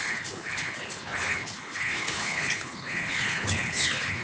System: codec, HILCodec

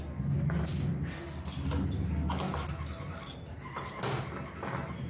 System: none